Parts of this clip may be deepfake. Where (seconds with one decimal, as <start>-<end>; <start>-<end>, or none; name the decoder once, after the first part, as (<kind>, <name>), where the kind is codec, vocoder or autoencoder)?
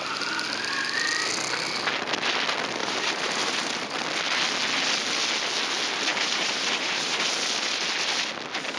2.8-3.9 (vocoder, BigVGAN v2); 6.1-7.4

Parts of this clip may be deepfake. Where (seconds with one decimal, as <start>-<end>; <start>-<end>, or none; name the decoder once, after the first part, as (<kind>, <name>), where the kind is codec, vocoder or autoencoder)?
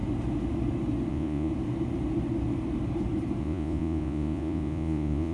1.1-1.5 (vocoder, Vocos); 3.4-5.3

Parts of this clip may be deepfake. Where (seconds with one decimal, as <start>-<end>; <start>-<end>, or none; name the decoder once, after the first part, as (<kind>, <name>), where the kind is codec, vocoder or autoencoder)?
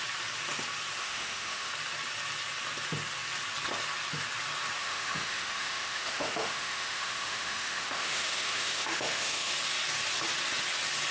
1.0-1.7 (autoencoder, DAC-VAE); 4.8-9.5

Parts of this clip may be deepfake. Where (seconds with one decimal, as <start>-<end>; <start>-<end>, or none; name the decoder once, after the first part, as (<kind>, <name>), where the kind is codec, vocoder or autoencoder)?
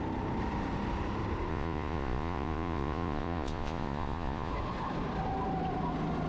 1.5-4.5 (vocoder, Vocos)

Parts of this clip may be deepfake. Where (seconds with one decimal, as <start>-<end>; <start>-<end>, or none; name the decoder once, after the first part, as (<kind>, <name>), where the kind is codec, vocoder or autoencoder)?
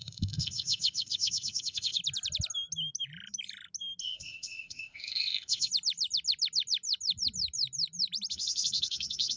0.0-2.0 (codec, ZipCodec); 4.0-5.7; 8.3-9.4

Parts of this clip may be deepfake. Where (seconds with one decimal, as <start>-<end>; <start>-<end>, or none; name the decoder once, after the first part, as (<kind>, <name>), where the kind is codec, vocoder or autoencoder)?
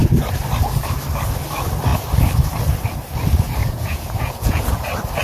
3.6-4.8 (vocoder, Vocos)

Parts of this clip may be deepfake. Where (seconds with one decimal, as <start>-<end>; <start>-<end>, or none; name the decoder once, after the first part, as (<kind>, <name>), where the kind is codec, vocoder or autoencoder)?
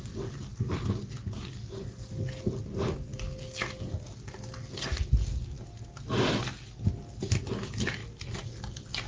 none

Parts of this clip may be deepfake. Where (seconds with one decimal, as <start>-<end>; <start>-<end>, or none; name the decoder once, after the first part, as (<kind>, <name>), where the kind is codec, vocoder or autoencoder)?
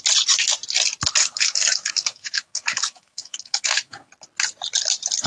1.2-4.1 (autoencoder, DAC-VAE)